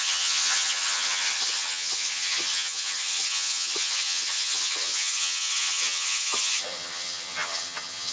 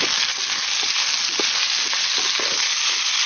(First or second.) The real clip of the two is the second